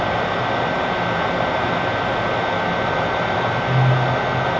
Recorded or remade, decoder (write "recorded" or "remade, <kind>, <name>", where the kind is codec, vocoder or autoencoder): recorded